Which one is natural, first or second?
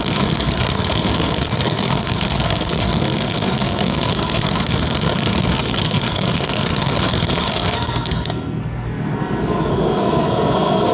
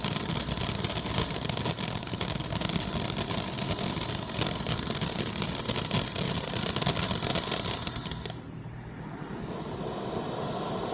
second